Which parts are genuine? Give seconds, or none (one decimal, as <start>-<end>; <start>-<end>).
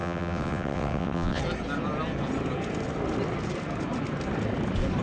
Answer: 1.4-5.0